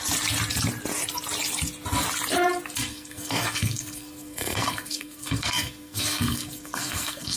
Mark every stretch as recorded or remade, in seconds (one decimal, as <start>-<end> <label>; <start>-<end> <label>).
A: 0.0-2.9 recorded; 2.9-7.4 remade

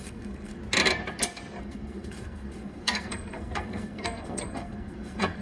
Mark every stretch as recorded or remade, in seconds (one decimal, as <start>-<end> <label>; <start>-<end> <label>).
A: 0.0-0.6 remade; 0.6-1.6 recorded; 1.6-5.4 remade

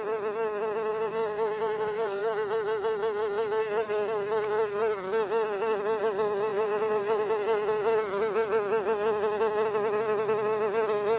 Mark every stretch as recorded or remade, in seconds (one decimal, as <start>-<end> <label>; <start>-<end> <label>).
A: 0.0-0.9 recorded; 0.9-2.2 remade; 2.2-6.5 recorded; 6.5-7.3 remade; 7.3-11.2 recorded

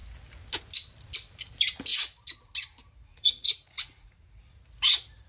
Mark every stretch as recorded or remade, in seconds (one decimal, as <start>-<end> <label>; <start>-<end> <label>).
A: 0.0-3.1 recorded; 3.1-4.4 remade; 4.4-5.3 recorded